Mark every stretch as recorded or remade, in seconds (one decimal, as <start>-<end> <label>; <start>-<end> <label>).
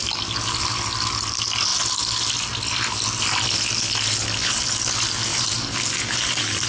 0.0-5.3 recorded; 5.3-6.7 remade